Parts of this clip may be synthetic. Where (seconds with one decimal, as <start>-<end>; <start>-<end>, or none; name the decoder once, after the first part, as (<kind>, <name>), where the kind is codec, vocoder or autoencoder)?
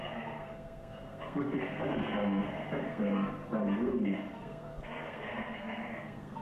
0.0-6.4 (codec, SNAC)